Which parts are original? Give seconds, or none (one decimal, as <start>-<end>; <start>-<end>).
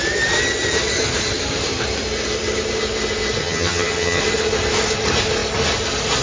0.0-3.4; 4.2-6.2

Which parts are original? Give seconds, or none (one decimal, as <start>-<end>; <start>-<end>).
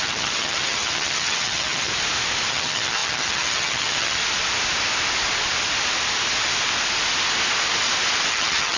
1.9-2.5; 4.2-8.3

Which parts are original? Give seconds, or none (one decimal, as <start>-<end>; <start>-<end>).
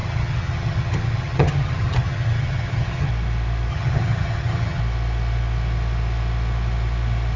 3.1-3.7; 4.8-7.4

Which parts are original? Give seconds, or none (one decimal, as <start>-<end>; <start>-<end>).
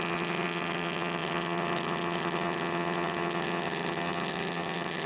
none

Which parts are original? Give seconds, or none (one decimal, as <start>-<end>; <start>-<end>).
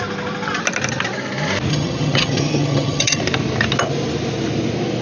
0.0-1.7; 3.2-5.0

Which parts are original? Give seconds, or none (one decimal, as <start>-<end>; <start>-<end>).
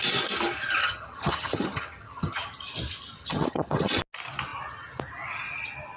0.0-0.8; 2.5-3.2; 4.0-6.0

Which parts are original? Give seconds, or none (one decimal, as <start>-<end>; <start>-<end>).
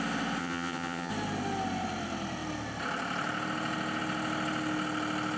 0.0-0.4; 1.1-5.4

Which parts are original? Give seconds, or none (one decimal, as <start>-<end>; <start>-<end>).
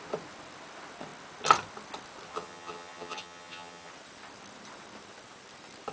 0.0-2.3; 3.9-5.9